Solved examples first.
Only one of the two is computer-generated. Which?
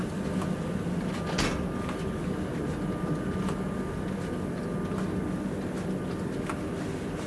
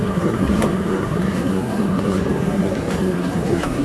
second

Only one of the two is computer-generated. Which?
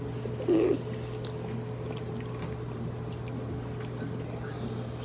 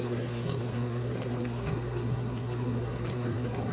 second